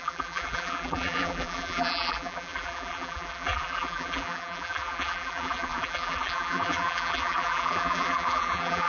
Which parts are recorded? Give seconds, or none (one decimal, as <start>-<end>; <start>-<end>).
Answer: none